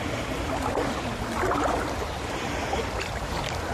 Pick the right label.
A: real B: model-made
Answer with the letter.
B